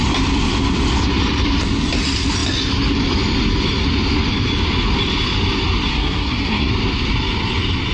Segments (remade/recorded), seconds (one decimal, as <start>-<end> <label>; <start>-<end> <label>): 0.0-5.9 recorded; 5.9-6.7 remade; 6.7-7.9 recorded